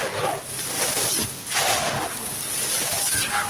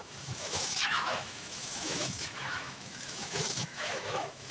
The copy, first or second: second